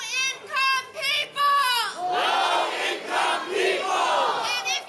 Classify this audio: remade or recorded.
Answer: recorded